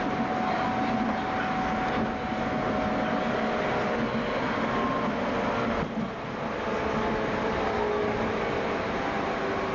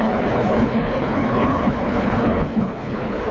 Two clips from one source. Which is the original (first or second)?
first